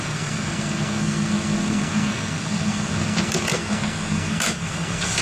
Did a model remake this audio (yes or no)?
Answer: yes